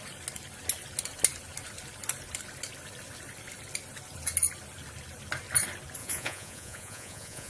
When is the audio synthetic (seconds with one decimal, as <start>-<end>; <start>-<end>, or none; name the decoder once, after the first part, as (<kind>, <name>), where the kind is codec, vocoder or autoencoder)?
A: 6.0-7.5 (vocoder, Vocos)